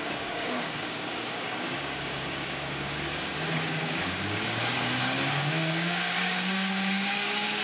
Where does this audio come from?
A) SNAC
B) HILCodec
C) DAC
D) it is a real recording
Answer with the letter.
C